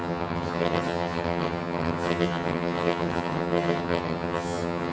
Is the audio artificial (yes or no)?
yes